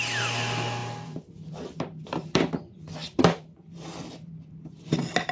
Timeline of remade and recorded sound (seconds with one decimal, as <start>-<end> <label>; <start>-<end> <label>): 0.0-0.8 recorded; 0.8-1.7 remade; 1.7-3.0 recorded; 3.0-4.3 remade; 4.3-5.3 recorded